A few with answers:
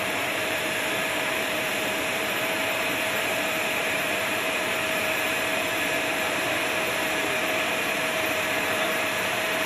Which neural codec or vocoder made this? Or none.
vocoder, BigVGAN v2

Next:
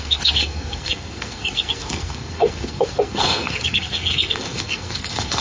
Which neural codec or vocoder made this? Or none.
codec, SNAC